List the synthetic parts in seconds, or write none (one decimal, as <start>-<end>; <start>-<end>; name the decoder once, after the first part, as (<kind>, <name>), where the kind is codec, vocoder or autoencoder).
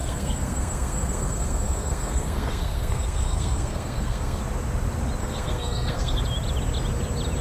0.0-4.4 (codec, SNAC); 5.2-6.2